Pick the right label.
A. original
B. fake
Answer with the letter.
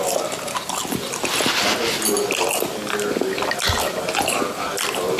A